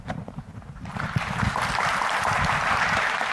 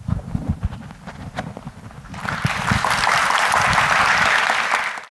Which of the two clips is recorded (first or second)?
second